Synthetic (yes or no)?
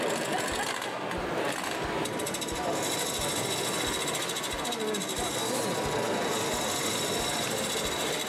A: no